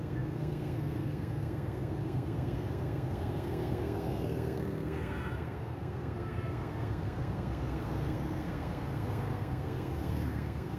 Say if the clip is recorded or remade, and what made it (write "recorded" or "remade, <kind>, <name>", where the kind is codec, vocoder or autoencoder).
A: remade, codec, SNAC